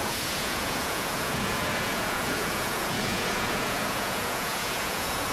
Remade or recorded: remade